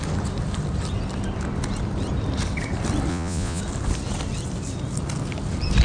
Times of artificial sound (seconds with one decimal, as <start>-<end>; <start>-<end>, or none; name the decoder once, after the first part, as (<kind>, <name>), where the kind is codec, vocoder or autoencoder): 3.1-3.6 (vocoder, Vocos)